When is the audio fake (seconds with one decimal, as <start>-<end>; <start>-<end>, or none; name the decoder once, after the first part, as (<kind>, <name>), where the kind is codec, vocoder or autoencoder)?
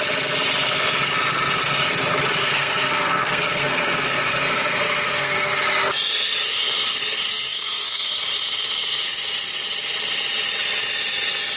2.5-5.6 (codec, SNAC); 7.3-8.2